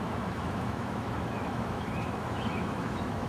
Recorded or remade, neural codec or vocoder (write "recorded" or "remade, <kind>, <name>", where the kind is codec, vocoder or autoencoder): remade, autoencoder, DAC-VAE